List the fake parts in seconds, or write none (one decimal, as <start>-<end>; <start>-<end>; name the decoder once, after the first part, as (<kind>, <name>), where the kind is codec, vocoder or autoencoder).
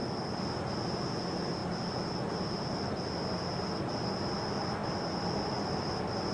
none